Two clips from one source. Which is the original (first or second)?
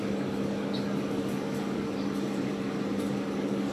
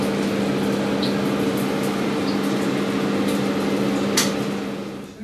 second